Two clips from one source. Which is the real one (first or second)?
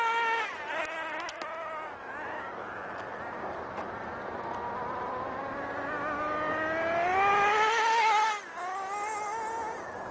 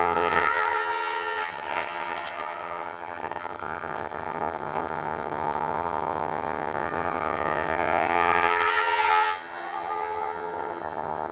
first